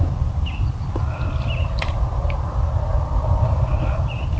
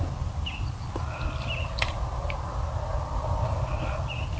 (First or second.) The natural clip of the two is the second